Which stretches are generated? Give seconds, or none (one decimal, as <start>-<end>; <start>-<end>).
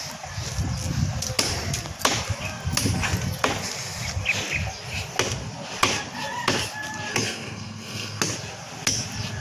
7.1-8.2